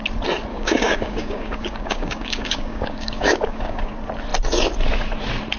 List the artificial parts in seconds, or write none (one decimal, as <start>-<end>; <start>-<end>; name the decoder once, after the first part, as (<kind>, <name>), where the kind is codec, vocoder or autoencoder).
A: 0.5-3.9 (codec, DAC)